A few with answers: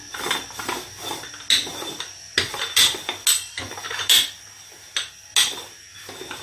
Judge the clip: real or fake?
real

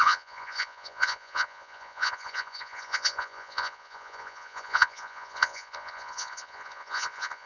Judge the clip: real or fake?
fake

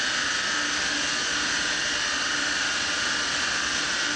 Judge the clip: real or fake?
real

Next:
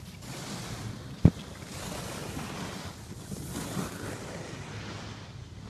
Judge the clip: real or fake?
real